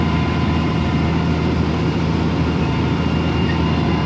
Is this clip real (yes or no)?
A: no